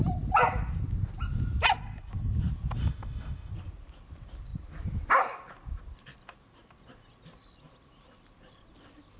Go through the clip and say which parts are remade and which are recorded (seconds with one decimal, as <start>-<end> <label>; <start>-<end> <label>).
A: 0.0-2.8 recorded; 2.8-3.5 remade; 3.5-9.2 recorded